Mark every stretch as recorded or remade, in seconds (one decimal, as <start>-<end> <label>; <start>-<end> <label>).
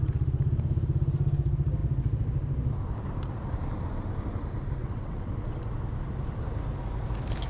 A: 0.0-4.8 recorded; 4.8-5.3 remade; 5.3-7.5 recorded